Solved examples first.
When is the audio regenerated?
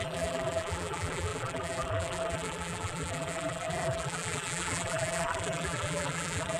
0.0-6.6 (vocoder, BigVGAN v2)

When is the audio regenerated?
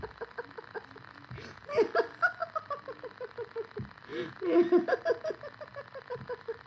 none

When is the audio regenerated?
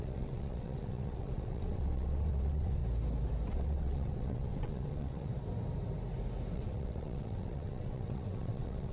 0.0-2.8 (vocoder, WaveNeXt); 3.5-5.3; 6.5-8.9